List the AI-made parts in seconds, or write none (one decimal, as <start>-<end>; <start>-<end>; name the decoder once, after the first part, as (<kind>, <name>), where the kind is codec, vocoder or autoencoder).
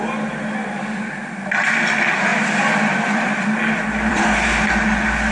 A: 1.2-1.8 (vocoder, BigVGAN v2); 2.3-4.2